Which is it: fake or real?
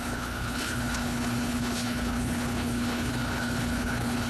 fake